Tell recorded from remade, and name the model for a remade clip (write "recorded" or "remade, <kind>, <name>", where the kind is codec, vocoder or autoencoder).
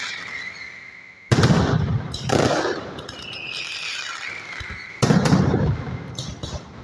remade, vocoder, BigVGAN v2